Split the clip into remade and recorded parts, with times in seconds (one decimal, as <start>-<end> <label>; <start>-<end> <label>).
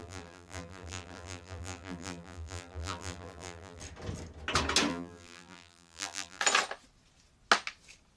0.0-3.8 remade; 3.8-4.9 recorded; 4.9-6.4 remade; 6.4-8.2 recorded